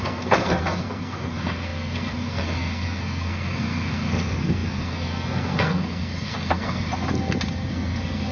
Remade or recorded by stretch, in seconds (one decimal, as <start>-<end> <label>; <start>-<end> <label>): 0.0-6.9 remade; 6.9-7.7 recorded; 7.7-8.3 remade